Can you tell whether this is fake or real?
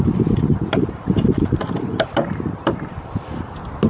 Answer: real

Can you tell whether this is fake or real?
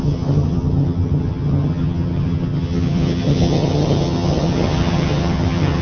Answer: fake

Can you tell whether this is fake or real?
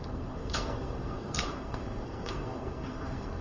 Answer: fake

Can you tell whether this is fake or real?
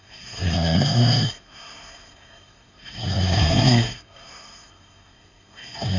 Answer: fake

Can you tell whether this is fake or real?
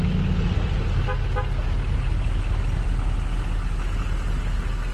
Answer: real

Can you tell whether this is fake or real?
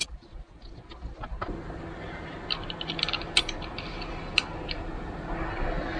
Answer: real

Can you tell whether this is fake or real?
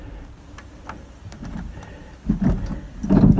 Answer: real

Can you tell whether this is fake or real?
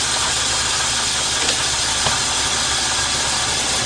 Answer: real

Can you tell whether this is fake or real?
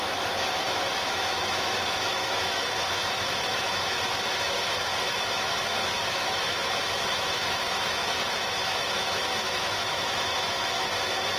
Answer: fake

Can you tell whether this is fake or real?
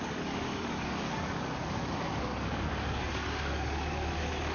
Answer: fake